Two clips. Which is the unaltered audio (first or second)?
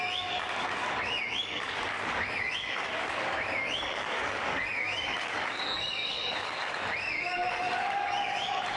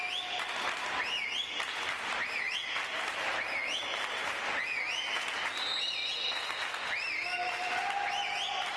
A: second